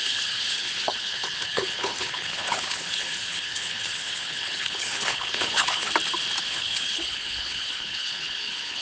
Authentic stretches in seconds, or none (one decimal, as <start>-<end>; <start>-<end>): 5.9-6.4